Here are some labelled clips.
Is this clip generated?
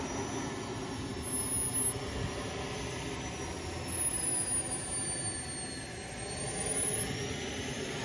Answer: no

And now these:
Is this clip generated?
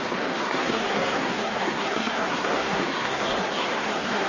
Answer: yes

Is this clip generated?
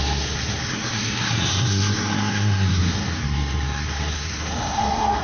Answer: yes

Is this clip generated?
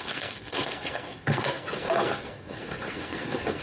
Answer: yes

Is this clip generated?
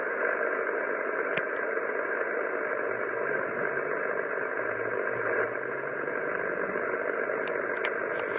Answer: no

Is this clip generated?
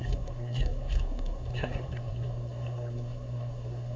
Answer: yes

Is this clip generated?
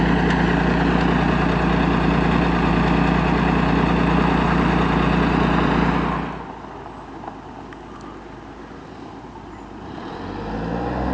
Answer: no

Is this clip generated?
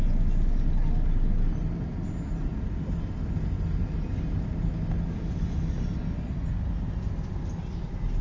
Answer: no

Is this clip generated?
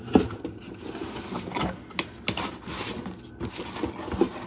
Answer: no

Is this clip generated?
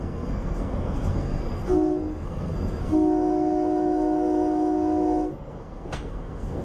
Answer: yes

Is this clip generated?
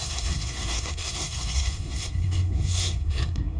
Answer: yes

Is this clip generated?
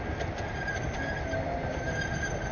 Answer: no